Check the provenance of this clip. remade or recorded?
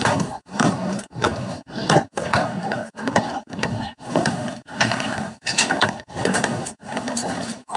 remade